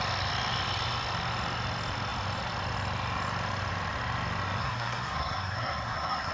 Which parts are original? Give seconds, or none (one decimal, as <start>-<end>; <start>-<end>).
0.0-4.6